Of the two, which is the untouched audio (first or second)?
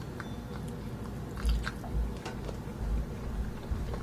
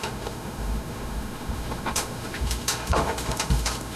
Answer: first